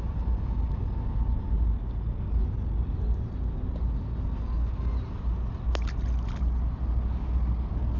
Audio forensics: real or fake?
real